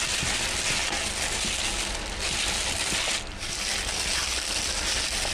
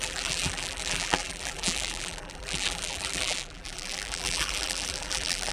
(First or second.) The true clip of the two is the first